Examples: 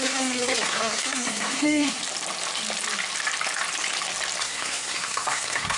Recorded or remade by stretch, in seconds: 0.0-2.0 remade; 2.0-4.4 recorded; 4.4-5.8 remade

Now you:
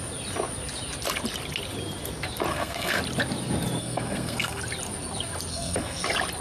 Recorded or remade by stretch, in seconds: 0.0-2.5 recorded; 2.5-3.0 remade; 3.0-3.8 recorded; 3.8-4.6 remade; 4.6-5.5 recorded; 5.5-6.0 remade; 6.0-6.4 recorded

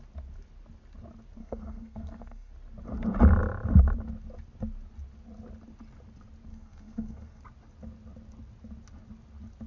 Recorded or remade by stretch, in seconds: 0.0-1.4 recorded; 1.4-2.5 remade; 2.5-6.5 recorded; 6.5-7.4 remade; 7.4-9.7 recorded